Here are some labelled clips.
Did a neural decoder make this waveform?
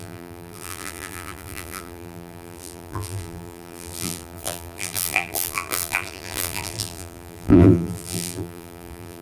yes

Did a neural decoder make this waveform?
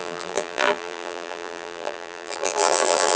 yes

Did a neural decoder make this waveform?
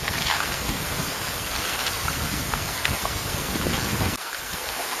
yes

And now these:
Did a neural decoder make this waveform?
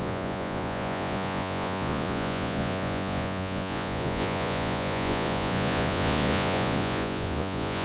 yes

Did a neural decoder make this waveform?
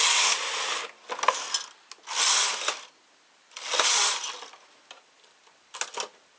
no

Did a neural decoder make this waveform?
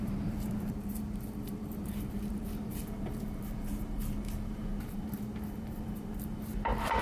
yes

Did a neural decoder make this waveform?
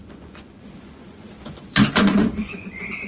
yes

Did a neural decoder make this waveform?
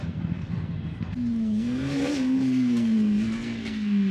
yes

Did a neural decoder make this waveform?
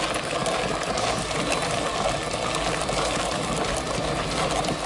no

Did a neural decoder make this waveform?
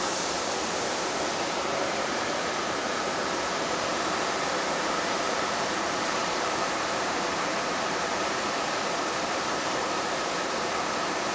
yes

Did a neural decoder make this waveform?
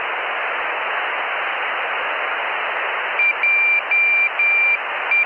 no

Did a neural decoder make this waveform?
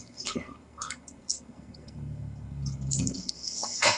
yes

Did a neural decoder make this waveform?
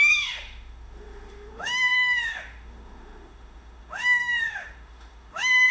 yes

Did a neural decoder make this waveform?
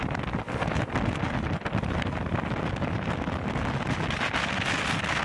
no